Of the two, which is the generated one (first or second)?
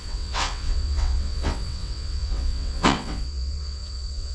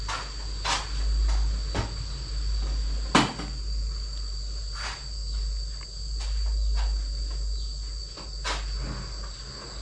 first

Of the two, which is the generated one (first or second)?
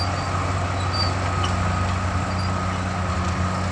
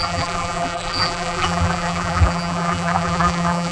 second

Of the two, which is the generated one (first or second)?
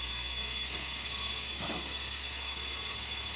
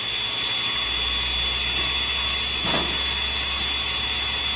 first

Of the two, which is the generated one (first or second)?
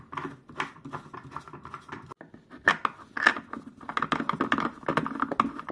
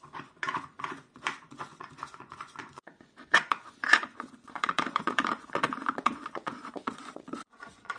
second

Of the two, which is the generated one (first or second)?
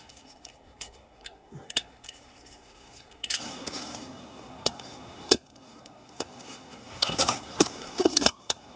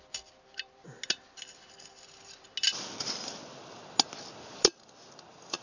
first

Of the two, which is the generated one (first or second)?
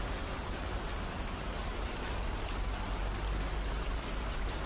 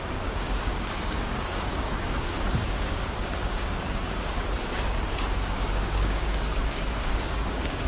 second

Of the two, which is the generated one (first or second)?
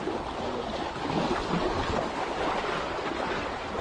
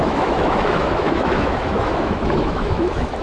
second